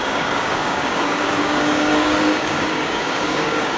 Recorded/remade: remade